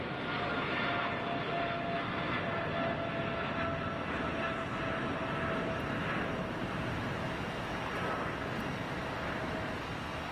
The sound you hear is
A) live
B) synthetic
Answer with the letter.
A